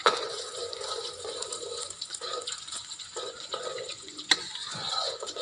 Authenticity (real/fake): fake